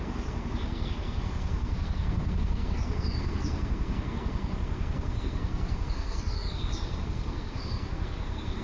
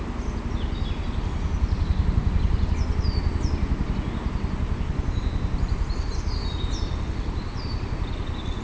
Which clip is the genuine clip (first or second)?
second